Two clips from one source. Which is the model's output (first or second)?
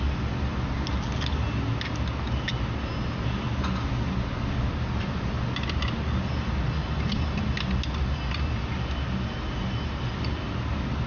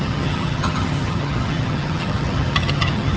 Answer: second